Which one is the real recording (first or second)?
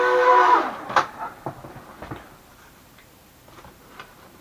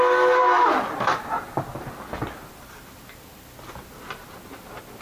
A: second